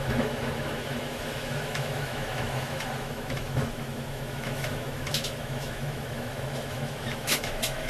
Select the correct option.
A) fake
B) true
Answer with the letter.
A